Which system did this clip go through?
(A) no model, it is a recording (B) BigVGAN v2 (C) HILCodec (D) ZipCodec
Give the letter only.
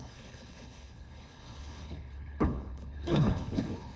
C